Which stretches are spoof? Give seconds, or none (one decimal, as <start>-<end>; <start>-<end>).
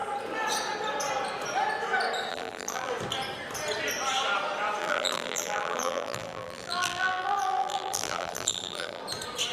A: 2.3-2.9; 4.8-9.0